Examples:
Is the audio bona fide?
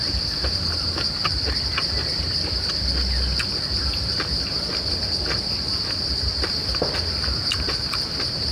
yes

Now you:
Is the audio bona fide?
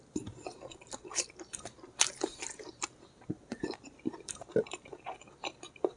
no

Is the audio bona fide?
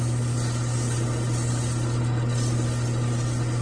yes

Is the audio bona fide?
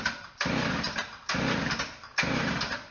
yes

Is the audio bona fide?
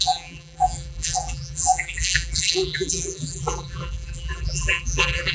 no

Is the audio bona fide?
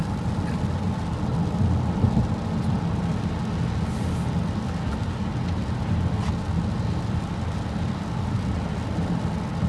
yes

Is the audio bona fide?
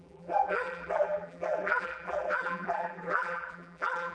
no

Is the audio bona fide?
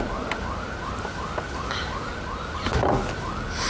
yes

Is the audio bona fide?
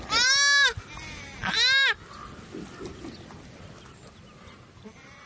yes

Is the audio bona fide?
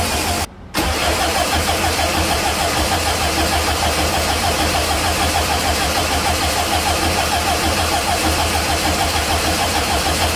no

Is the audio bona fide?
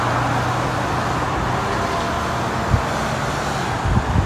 yes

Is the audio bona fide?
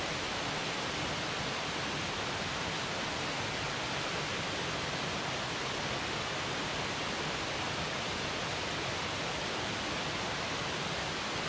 yes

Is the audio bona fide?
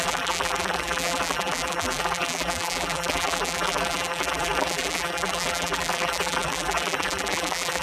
no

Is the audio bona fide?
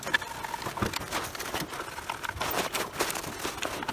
yes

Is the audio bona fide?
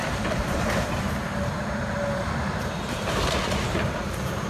no